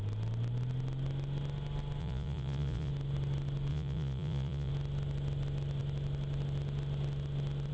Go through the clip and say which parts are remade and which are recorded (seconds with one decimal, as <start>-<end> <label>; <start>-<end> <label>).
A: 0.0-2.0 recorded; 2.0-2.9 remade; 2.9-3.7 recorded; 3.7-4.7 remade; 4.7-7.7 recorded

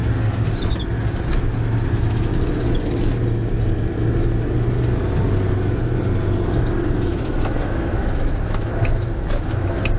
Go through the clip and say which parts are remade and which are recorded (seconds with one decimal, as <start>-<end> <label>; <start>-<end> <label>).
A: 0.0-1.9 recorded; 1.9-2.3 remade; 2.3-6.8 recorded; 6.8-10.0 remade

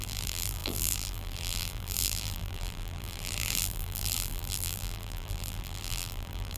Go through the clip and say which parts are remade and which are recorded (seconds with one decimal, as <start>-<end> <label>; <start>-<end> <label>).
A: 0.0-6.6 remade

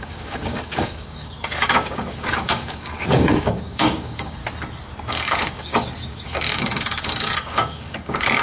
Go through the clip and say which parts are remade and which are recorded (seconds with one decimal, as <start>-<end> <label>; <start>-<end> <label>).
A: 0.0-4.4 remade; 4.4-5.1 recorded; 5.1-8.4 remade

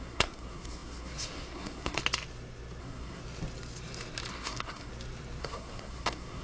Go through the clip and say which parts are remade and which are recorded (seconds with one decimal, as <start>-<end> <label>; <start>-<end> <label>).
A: 0.0-2.0 remade; 2.0-2.8 recorded; 2.8-3.2 remade; 3.2-4.3 recorded; 4.3-4.9 remade; 4.9-5.4 recorded; 5.4-6.4 remade